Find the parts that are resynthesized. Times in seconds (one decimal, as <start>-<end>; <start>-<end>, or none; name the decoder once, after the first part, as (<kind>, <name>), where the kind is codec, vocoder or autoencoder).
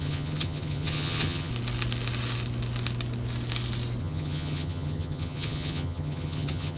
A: 0.0-1.5 (vocoder, HiFi-GAN); 4.0-6.8